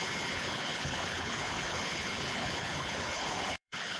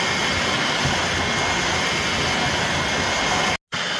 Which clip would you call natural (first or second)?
second